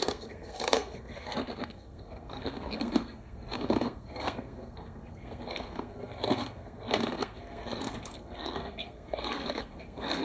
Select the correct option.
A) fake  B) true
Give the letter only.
A